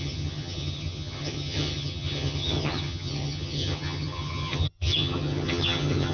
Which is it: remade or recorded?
remade